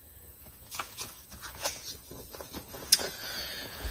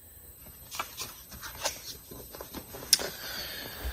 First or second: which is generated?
first